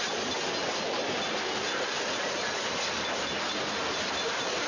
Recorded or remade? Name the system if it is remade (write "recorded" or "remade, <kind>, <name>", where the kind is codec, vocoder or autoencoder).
recorded